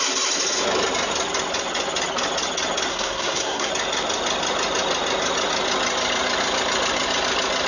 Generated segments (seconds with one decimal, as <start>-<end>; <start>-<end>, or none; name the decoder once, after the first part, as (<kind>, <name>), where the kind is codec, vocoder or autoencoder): 2.9-3.7 (codec, SNAC)